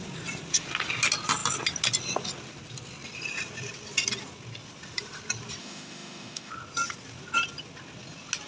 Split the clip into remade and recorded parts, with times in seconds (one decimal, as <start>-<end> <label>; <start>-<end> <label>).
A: 0.0-5.6 recorded; 5.6-6.5 remade; 6.5-8.5 recorded